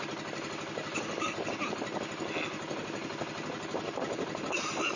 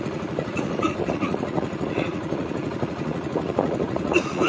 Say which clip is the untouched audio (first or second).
first